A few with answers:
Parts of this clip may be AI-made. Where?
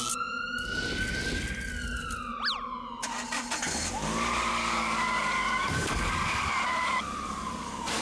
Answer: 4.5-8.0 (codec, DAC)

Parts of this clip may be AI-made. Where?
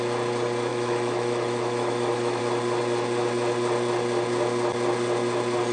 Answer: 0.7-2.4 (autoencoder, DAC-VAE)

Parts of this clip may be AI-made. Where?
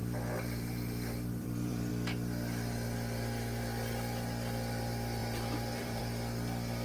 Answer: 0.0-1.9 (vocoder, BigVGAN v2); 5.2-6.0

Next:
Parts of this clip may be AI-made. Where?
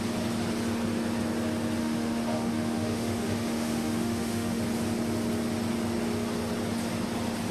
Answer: 1.8-4.6 (autoencoder, DAC-VAE)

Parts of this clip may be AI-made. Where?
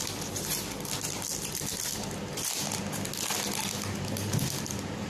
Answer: none